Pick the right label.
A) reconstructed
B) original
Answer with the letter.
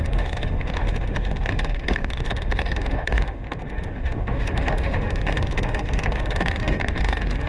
A